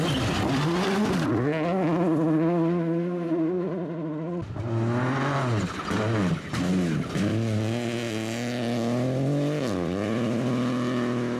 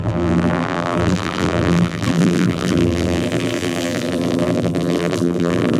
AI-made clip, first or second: second